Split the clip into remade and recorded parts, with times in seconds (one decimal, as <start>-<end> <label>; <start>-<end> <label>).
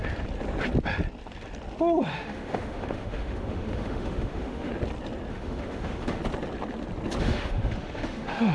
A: 0.0-2.0 recorded; 2.0-4.7 remade; 4.7-5.3 recorded; 5.3-6.2 remade; 6.2-7.2 recorded; 7.2-8.5 remade